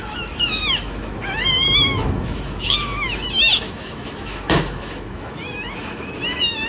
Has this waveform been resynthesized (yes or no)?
yes